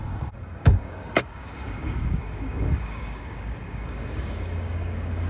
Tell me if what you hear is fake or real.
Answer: fake